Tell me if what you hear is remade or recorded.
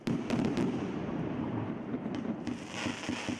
recorded